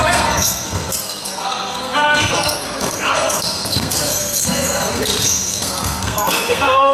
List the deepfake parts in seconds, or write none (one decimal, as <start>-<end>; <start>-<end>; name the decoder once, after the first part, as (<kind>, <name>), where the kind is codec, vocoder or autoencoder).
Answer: 0.0-6.9 (codec, SNAC)